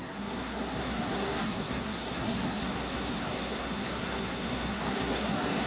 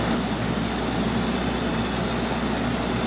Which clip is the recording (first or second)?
second